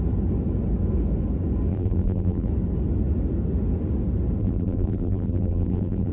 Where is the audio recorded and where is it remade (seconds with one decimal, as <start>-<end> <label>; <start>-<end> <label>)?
0.0-1.7 recorded; 1.7-2.5 remade; 2.5-4.4 recorded; 4.4-6.1 remade